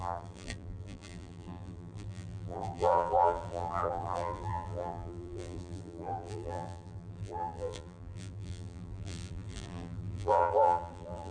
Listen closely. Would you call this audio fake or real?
fake